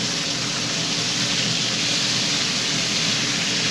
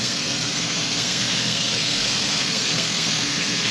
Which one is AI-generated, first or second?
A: second